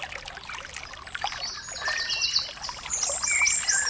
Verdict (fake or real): real